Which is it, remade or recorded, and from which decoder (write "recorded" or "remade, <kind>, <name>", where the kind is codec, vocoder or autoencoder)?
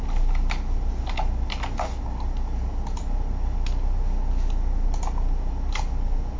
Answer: recorded